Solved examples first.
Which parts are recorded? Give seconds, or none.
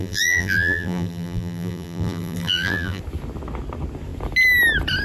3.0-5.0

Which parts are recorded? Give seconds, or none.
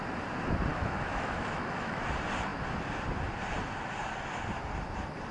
0.0-0.7; 2.0-5.3